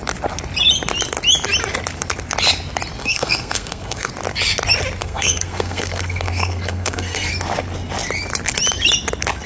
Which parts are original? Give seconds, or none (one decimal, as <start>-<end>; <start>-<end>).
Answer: 0.0-3.0; 4.1-5.0; 7.3-9.5